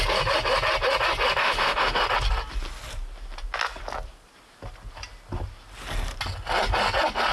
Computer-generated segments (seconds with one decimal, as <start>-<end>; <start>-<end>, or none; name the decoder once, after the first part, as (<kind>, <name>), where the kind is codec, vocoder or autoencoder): 1.4-2.0 (autoencoder, DAC-VAE)